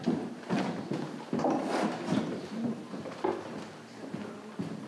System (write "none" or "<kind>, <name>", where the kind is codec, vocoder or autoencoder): none